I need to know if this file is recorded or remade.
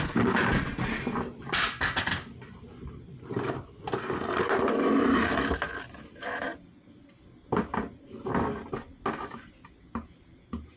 recorded